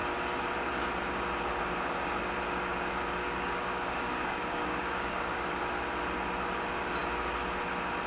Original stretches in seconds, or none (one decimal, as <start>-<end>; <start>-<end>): 0.0-3.2; 5.4-8.1